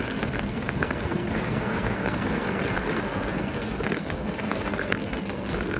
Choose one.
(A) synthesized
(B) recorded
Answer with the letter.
A